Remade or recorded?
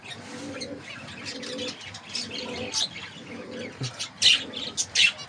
recorded